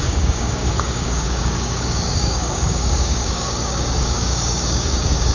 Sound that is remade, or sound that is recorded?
remade